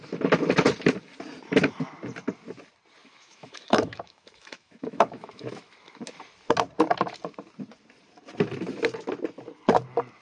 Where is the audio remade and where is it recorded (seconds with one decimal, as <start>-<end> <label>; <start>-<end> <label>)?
0.0-3.0 recorded; 3.0-6.0 remade; 6.0-10.2 recorded